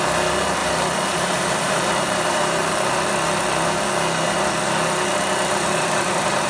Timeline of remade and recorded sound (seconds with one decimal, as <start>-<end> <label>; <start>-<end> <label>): 0.0-0.6 recorded; 0.6-2.4 remade; 2.4-5.1 recorded; 5.1-6.5 remade